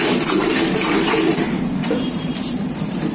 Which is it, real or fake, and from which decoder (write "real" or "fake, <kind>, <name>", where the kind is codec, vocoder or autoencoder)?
fake, vocoder, BigVGAN v2